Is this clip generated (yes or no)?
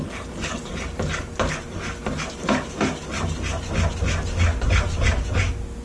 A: no